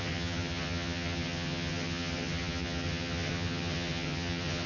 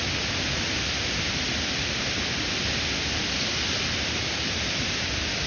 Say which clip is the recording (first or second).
second